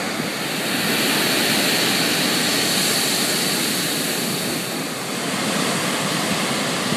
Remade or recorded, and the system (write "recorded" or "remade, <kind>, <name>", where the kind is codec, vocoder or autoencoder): recorded